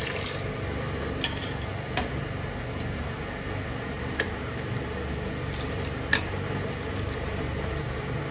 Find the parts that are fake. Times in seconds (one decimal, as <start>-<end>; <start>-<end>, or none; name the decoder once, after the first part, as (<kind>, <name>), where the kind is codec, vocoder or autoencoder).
none